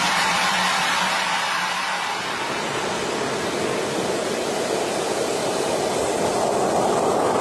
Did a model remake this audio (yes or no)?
no